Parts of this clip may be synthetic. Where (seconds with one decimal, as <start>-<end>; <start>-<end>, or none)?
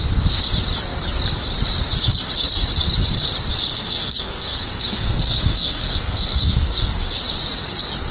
3.7-7.1